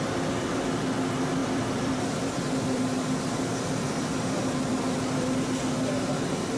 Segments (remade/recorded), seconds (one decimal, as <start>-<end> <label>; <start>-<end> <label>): 0.0-1.4 recorded; 1.4-5.4 remade; 5.4-6.6 recorded